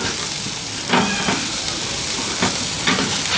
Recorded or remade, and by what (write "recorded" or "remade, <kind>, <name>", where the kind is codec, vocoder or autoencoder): recorded